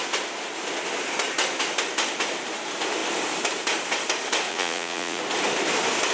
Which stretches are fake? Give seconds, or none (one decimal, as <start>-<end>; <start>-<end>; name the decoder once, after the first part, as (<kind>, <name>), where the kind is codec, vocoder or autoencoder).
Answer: 4.5-5.2 (vocoder, Vocos)